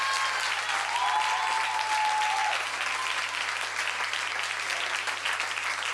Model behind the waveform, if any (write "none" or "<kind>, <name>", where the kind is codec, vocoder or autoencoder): none